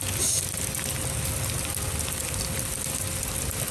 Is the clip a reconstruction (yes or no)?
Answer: no